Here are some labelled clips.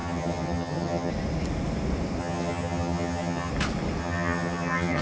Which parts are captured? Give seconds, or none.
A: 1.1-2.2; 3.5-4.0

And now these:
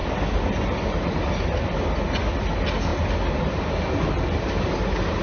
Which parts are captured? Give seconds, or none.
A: 0.0-5.2

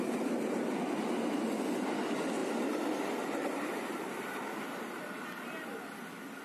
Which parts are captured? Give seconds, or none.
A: 0.0-2.4; 4.1-6.4